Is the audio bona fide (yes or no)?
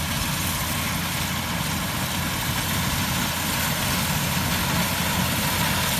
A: yes